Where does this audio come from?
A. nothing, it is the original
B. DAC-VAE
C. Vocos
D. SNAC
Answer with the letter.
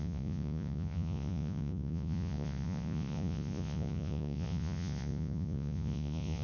C